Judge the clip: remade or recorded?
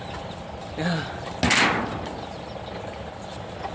recorded